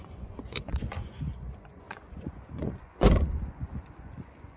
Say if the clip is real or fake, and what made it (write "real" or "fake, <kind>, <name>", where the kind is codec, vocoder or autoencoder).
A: fake, vocoder, Vocos